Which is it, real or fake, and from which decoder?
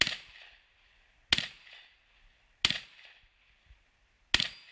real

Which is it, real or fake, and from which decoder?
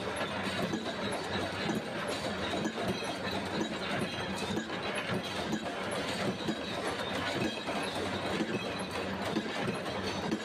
real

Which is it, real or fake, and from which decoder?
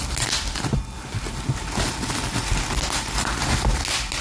real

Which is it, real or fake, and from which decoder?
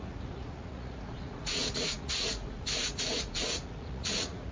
fake, vocoder, Vocos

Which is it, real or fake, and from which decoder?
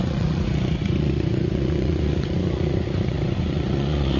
fake, vocoder, Vocos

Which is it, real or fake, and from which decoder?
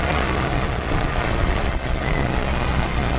fake, vocoder, Vocos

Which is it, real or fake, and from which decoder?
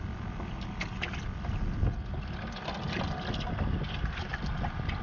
real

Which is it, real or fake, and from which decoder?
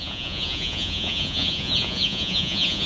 fake, vocoder, Vocos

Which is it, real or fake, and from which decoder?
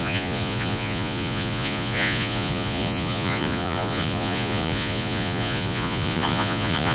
fake, vocoder, Vocos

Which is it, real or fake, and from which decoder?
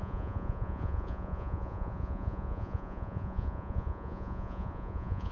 fake, vocoder, Vocos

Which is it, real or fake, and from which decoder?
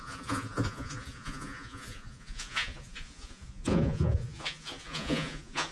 fake, vocoder, Vocos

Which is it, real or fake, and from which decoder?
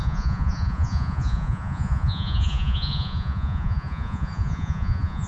fake, vocoder, Vocos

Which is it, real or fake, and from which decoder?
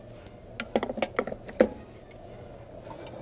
real